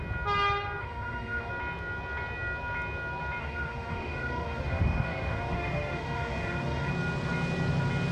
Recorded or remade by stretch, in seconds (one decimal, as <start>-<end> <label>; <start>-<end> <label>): 0.0-0.8 recorded; 0.8-1.5 remade; 1.5-3.4 recorded; 3.4-6.9 remade; 6.9-8.1 recorded